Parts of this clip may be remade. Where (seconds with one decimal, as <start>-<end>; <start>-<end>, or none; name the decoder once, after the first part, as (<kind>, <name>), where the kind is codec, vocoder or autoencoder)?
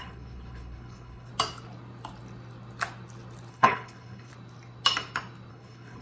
0.0-1.3 (codec, HILCodec); 3.5-4.3; 5.5-6.0